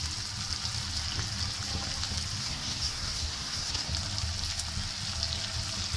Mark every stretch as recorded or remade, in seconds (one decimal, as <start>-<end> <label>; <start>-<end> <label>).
0.0-2.4 recorded; 2.4-3.9 remade; 3.9-6.0 recorded